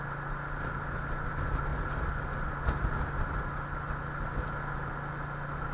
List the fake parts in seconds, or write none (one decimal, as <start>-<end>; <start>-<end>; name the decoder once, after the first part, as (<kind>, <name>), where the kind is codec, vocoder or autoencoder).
none